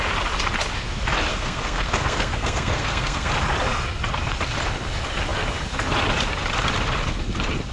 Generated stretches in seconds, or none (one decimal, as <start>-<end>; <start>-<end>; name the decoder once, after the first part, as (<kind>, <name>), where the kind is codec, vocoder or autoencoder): 1.3-3.3 (codec, SNAC)